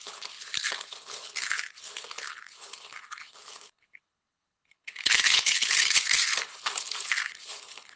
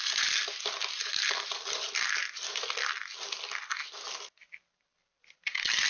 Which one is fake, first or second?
first